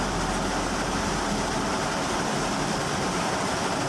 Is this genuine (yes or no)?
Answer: yes